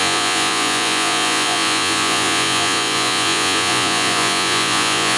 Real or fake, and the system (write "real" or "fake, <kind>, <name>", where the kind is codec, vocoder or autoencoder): fake, vocoder, Vocos